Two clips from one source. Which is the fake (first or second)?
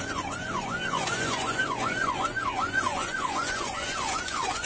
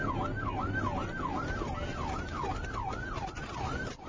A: first